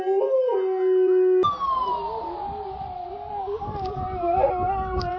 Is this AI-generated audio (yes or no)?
no